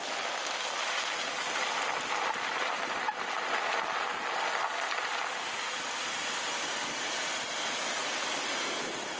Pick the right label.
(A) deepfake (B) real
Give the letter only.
B